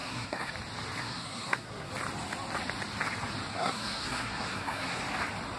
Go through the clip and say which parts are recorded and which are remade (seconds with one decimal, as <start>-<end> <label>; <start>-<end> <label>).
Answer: 0.0-0.5 remade; 0.5-1.0 recorded; 1.0-1.9 remade; 1.9-3.5 recorded; 3.5-5.0 remade; 5.0-5.6 recorded